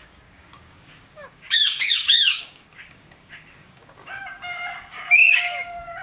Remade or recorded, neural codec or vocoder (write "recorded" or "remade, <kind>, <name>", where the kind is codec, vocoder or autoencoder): remade, codec, DAC